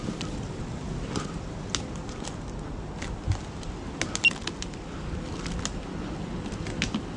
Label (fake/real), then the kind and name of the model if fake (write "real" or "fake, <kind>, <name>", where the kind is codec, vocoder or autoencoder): real